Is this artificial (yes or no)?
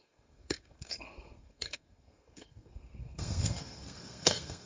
yes